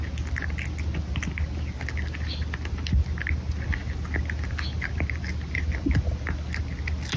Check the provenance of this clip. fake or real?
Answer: real